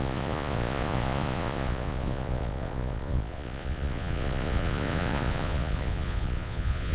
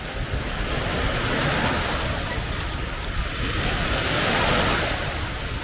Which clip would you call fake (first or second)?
first